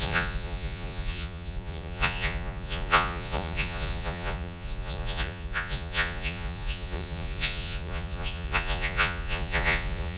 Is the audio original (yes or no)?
no